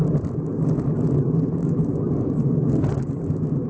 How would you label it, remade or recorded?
recorded